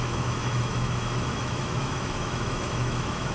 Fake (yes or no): yes